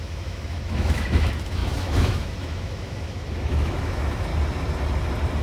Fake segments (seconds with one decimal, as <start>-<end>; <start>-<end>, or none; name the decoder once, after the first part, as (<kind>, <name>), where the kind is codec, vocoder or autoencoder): 0.0-4.3 (autoencoder, DAC-VAE)